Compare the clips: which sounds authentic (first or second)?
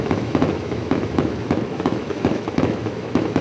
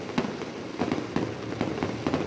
second